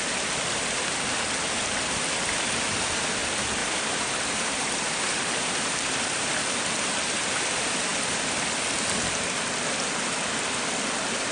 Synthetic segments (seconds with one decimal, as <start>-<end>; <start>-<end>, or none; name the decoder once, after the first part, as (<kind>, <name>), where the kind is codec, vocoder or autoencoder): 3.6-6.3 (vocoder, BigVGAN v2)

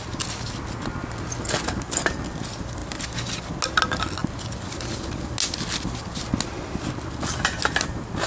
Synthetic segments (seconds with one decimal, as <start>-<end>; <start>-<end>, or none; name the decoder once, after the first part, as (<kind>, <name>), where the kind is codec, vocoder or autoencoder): none

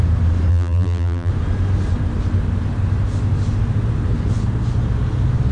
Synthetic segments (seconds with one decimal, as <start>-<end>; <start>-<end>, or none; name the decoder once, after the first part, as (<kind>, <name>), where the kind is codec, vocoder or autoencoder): 0.5-1.3 (vocoder, BigVGAN v2)

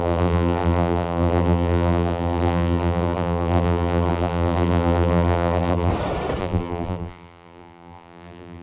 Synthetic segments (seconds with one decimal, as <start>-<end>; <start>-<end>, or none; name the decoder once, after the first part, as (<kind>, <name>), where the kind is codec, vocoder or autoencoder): 0.0-5.9 (vocoder, BigVGAN v2); 6.4-8.6

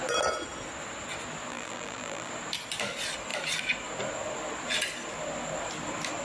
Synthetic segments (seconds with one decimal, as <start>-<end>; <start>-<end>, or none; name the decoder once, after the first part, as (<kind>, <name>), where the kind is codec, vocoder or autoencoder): 1.5-2.3 (vocoder, BigVGAN v2)

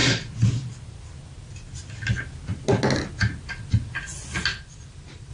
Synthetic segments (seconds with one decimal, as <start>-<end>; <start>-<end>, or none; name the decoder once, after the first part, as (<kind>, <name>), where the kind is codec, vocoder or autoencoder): 4.5-5.3 (vocoder, BigVGAN v2)

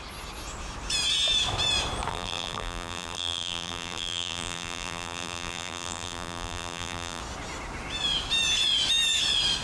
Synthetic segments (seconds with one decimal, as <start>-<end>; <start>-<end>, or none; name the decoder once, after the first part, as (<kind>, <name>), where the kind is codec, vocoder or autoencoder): 2.1-7.2 (vocoder, BigVGAN v2)